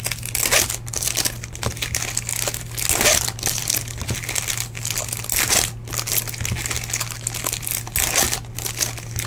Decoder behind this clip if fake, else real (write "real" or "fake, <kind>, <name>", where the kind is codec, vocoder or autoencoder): real